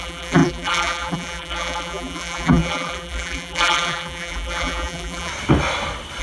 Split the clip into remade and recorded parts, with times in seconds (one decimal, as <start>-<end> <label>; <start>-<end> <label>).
0.0-5.3 remade; 5.3-6.2 recorded